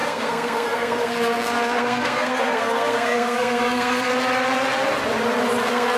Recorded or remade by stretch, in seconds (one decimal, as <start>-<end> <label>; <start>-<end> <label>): 0.0-4.1 remade; 4.1-5.6 recorded; 5.6-6.0 remade